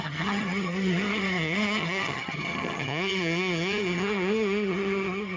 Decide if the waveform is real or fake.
fake